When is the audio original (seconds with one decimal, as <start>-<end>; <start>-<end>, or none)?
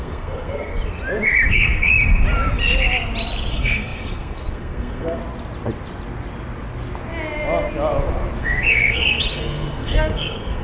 0.7-1.5; 1.9-3.5; 5.2-8.4